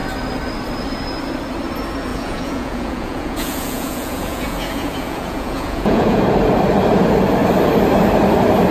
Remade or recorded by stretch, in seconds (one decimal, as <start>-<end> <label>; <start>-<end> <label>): 0.0-2.1 recorded; 2.1-6.2 remade; 6.2-8.7 recorded